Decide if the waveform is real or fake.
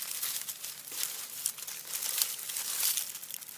real